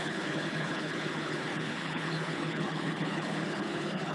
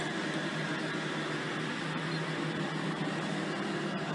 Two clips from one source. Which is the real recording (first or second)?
second